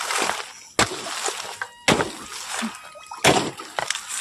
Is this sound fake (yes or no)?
no